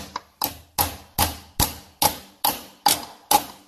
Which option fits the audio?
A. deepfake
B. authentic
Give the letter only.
B